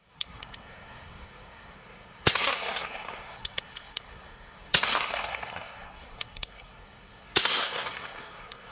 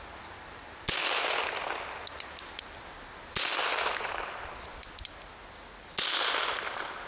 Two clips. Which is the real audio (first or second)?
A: second